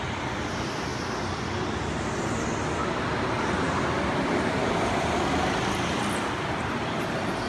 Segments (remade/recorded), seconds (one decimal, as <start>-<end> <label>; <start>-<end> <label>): 0.0-7.5 recorded